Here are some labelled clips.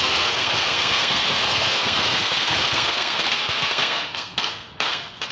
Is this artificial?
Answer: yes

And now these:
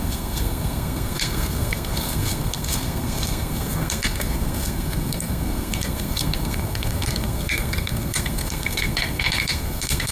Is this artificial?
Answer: yes